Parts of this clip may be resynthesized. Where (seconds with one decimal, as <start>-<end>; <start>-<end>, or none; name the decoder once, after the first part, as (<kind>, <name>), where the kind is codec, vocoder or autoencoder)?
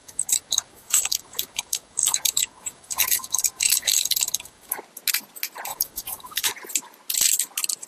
0.0-4.7 (codec, DAC); 5.7-6.5